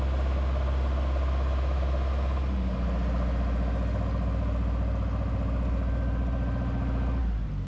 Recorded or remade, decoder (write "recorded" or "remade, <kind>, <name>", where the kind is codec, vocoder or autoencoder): recorded